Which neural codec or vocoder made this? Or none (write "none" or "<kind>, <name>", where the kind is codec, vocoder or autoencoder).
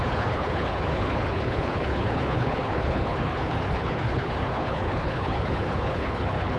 codec, HILCodec